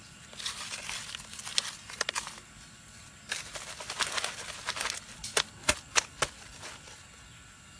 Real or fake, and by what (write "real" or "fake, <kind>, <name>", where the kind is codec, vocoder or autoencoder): real